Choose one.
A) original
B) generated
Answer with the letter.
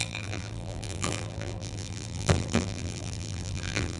B